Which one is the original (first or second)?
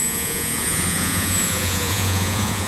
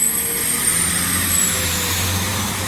second